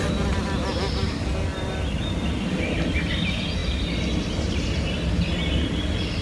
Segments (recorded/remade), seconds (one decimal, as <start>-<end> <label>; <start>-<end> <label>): 0.0-6.2 recorded